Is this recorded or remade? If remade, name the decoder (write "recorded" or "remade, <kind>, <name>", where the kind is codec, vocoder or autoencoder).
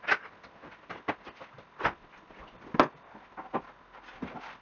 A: recorded